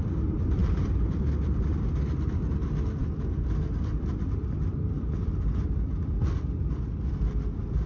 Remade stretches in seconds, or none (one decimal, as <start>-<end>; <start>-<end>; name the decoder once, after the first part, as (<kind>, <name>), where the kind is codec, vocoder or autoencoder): none